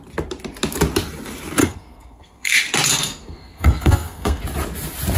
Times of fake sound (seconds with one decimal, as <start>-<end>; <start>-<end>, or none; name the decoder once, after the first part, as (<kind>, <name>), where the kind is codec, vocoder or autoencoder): 1.6-2.5 (codec, SNAC); 2.9-4.4